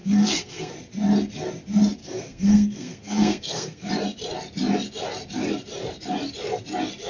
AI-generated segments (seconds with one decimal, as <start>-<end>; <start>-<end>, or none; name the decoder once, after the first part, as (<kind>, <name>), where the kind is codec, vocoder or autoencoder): 0.0-0.7 (codec, SNAC); 2.0-3.9